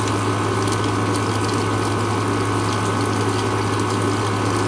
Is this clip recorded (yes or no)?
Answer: yes